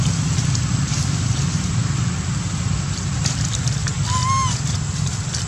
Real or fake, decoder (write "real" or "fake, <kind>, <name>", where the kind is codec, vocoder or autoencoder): real